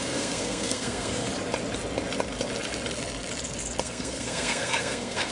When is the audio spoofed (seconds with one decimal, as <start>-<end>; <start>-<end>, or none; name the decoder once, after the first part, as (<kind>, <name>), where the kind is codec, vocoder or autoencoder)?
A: 0.0-1.3 (codec, SNAC); 3.8-5.3